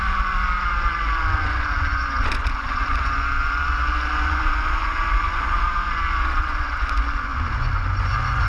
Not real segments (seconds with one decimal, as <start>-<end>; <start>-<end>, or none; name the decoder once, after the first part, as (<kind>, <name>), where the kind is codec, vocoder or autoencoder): 0.0-8.5 (vocoder, Vocos)